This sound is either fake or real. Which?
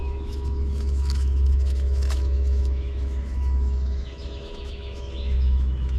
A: fake